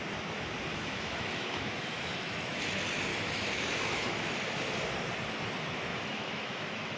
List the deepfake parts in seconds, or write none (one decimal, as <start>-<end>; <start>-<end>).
0.7-2.6; 3.1-4.3; 5.9-7.0